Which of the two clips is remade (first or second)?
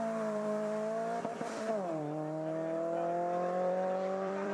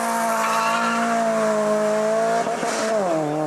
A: first